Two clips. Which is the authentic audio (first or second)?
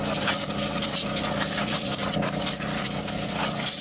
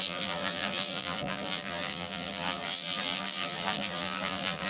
first